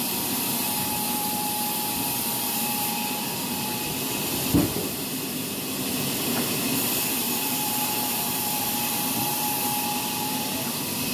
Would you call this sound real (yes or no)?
no